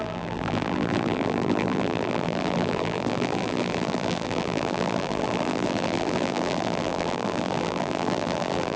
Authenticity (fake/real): fake